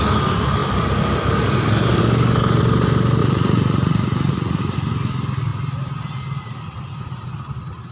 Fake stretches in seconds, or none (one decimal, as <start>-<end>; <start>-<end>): 3.2-4.6

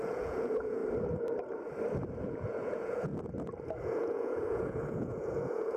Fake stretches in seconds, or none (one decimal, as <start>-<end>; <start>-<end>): 0.0-0.8; 2.2-3.1; 3.8-5.8